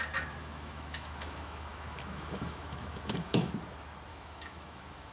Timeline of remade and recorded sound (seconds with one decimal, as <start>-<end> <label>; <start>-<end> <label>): 0.0-0.4 recorded; 0.4-3.5 remade; 3.5-4.1 recorded; 4.1-5.1 remade